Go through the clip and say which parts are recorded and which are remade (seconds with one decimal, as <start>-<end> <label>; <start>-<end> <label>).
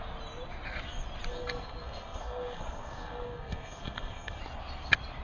0.0-1.3 recorded; 1.3-4.4 remade; 4.4-5.2 recorded